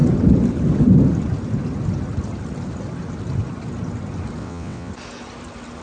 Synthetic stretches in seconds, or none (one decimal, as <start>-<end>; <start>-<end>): 4.4-4.9